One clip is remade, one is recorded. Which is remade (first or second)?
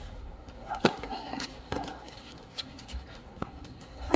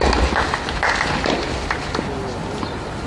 first